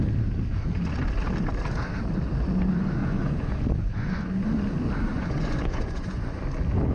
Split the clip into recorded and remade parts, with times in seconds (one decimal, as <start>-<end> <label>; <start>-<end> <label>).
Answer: 0.0-3.0 recorded; 3.0-4.2 remade; 4.2-5.1 recorded; 5.1-6.4 remade; 6.4-6.9 recorded